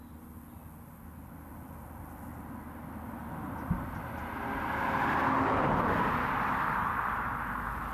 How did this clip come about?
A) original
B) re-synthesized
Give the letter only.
A